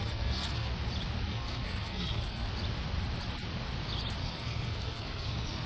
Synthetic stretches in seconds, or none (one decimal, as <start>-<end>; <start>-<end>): 0.0-0.7; 1.3-2.5; 4.2-5.7